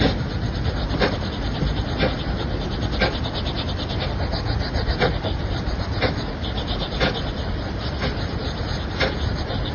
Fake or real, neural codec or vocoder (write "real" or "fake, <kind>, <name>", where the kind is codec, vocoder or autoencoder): real